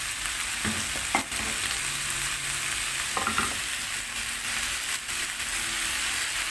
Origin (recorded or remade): recorded